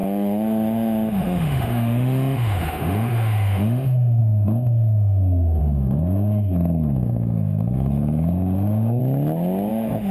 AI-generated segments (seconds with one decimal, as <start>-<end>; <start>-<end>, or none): 0.0-9.0; 9.7-10.1